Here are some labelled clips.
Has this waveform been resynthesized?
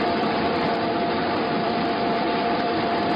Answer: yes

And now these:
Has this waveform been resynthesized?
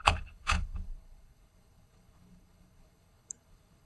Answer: yes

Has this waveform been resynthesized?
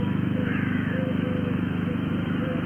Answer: yes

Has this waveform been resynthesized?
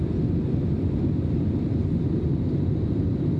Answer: no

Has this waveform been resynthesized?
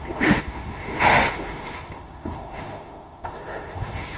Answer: yes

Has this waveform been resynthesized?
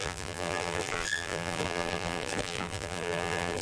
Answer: yes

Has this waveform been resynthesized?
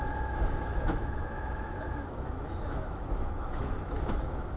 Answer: yes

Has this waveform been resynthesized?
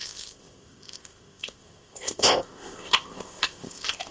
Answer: yes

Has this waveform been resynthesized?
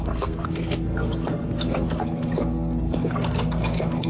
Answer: yes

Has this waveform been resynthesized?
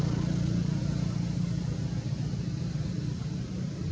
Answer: no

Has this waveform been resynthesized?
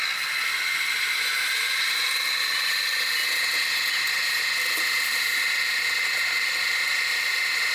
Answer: no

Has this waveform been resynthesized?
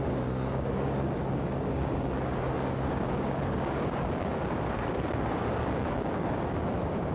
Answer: yes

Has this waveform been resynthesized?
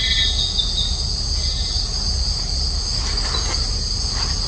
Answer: no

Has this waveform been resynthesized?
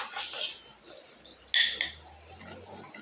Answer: no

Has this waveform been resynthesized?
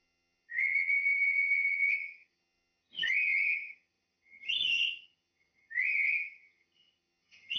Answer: yes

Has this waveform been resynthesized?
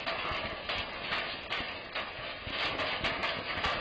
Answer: no